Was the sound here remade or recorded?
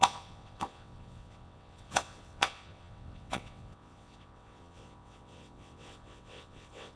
remade